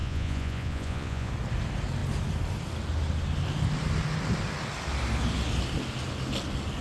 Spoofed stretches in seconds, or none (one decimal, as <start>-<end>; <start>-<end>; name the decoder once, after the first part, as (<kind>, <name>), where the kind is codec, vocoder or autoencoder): 0.0-1.3 (vocoder, Vocos)